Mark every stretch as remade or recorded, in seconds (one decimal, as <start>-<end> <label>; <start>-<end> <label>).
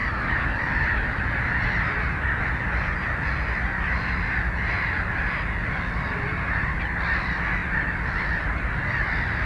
0.0-2.5 remade; 2.5-9.5 recorded